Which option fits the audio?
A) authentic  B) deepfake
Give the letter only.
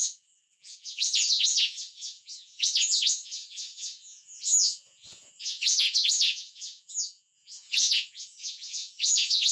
B